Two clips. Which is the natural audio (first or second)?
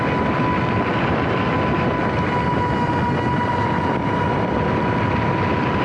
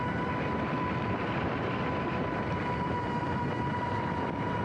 first